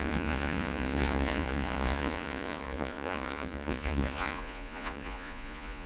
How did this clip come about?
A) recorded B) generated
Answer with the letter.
B